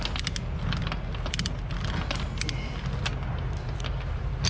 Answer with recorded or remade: recorded